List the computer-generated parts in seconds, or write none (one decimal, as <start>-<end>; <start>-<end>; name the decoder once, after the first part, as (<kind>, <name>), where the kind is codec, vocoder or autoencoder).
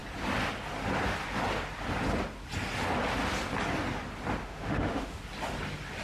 4.4-5.2 (autoencoder, DAC-VAE)